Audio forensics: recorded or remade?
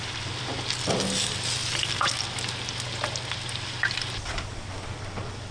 recorded